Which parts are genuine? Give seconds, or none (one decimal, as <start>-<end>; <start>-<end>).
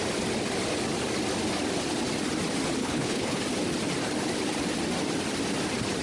0.0-2.8; 3.4-6.0